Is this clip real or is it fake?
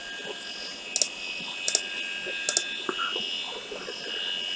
real